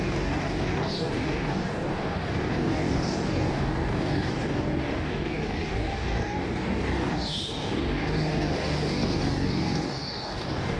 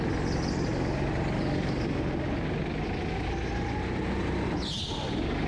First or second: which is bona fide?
second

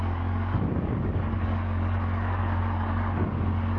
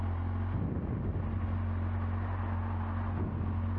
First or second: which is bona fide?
second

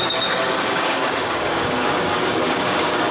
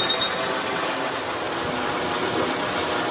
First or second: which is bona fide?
second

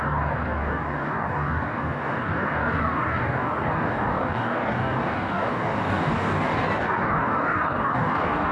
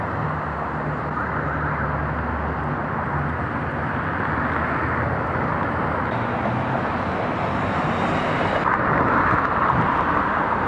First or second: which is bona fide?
second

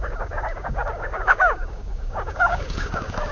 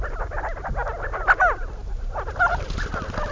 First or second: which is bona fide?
second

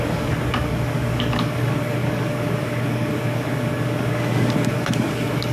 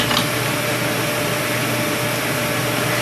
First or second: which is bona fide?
second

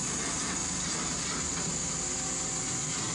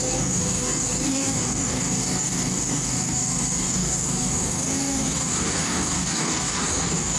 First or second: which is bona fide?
first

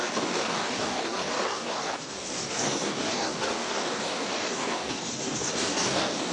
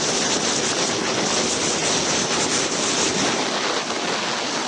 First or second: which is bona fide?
second